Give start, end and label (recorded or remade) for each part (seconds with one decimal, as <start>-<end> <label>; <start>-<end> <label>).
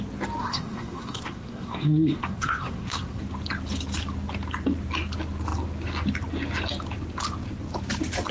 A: 0.0-0.4 recorded; 0.4-3.2 remade; 3.2-8.3 recorded